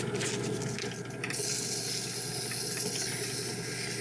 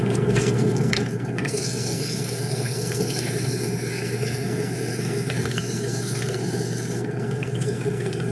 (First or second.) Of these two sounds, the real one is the first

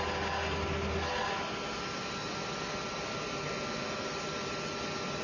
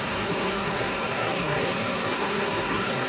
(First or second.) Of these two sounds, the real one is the first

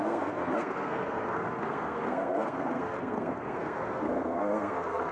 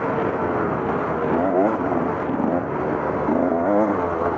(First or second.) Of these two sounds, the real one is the second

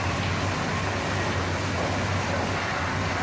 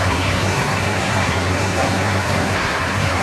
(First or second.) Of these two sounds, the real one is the first